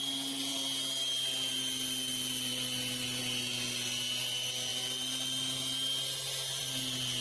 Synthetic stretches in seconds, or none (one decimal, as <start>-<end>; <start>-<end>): none